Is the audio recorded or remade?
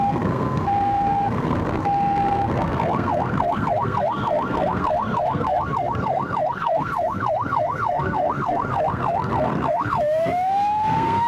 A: remade